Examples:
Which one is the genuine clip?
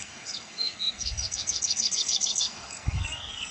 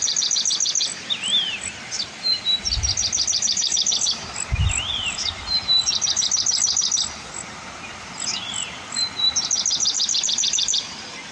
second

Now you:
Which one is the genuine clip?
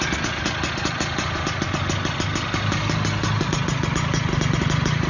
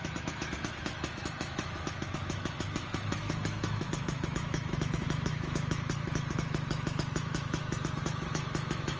first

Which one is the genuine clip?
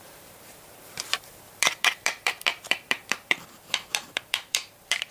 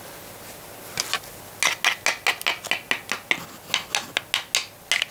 second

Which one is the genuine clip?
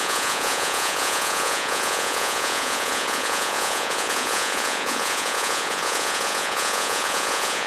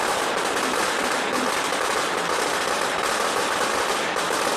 second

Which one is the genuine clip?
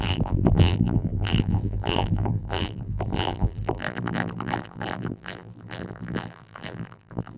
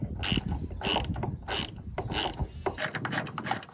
second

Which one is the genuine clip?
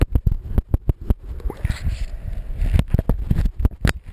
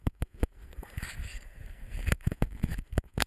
first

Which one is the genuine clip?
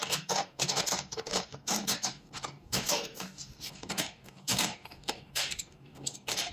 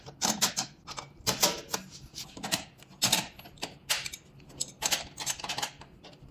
second